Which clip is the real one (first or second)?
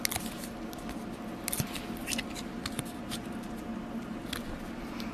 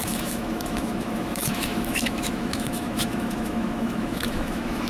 first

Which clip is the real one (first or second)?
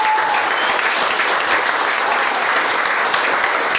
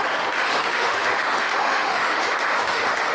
first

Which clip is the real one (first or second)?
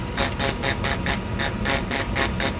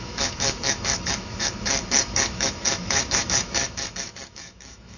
first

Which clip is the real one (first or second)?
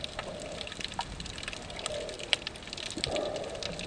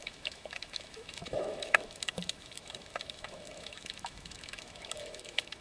first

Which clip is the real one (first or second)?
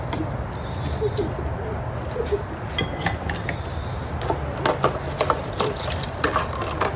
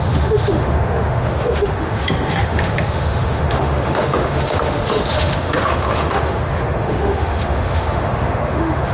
first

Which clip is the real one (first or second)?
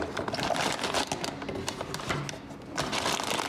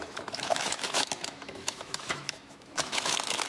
first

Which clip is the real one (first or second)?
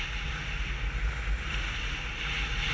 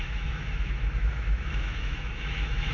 first